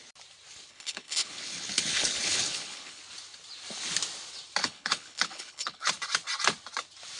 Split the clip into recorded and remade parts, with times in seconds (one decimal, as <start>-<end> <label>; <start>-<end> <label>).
0.0-0.7 recorded; 0.7-3.0 remade; 3.0-4.6 recorded; 4.6-5.9 remade; 5.9-7.2 recorded